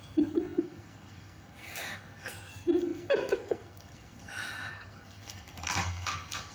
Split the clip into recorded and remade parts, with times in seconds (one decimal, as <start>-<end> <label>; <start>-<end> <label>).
0.0-6.5 remade